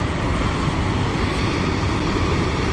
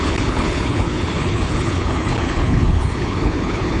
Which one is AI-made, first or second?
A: second